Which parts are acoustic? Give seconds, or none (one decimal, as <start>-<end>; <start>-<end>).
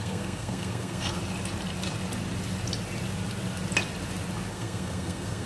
1.2-4.5